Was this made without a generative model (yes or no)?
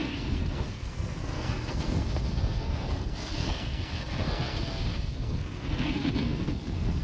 no